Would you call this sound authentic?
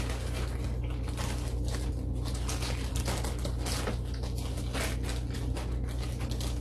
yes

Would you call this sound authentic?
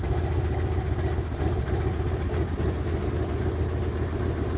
yes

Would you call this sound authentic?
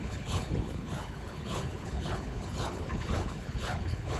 no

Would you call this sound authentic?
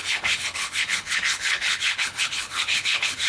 no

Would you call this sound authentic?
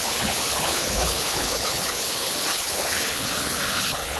no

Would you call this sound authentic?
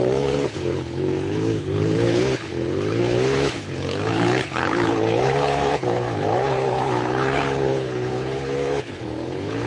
no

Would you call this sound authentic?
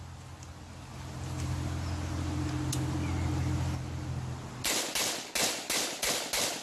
yes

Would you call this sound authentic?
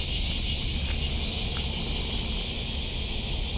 yes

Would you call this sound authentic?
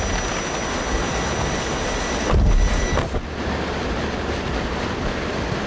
yes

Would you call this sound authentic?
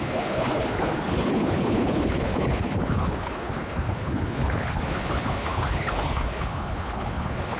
no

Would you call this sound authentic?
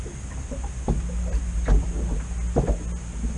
yes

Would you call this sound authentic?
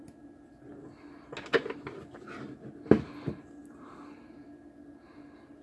yes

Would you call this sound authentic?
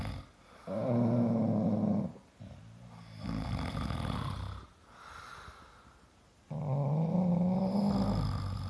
yes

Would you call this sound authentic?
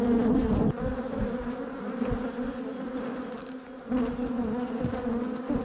yes